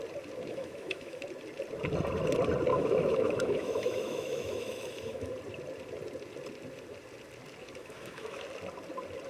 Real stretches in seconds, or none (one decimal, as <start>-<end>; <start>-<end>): 0.0-0.5; 1.2-2.7; 5.3-7.8; 8.4-9.3